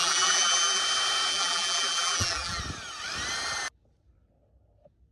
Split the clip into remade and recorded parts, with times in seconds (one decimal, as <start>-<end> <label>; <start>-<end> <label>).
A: 0.0-0.8 remade; 0.8-1.3 recorded; 1.3-2.6 remade; 2.6-5.1 recorded